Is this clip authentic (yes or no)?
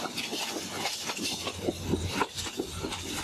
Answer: yes